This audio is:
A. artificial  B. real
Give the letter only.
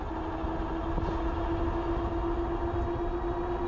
B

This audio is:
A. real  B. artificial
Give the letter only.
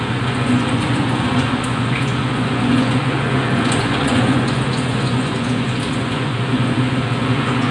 B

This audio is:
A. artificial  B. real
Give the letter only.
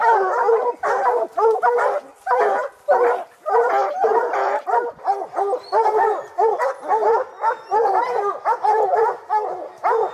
B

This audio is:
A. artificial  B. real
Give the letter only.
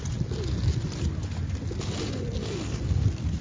B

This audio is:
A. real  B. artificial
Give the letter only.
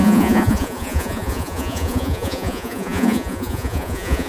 B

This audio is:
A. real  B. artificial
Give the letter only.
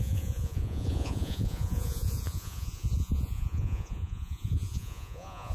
B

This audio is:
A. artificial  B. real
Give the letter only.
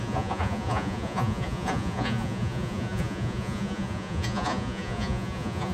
A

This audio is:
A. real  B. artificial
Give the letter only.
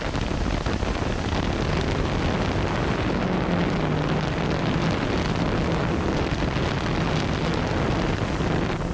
A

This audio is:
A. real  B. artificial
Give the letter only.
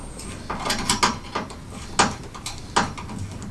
A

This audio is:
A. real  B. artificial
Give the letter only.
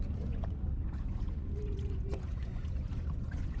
B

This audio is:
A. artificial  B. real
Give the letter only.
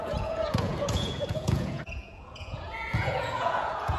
A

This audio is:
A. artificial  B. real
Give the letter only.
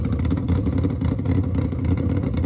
B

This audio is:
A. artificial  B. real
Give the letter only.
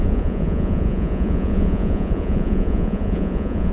A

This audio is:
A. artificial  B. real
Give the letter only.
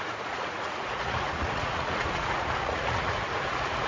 A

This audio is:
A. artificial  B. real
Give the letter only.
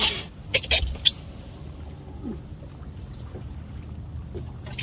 B